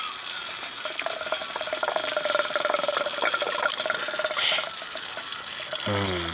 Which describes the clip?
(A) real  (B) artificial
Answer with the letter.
A